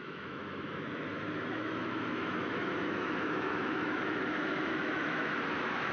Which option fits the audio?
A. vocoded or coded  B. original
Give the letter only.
A